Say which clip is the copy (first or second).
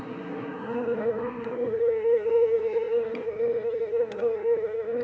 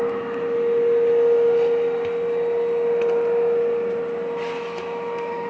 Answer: first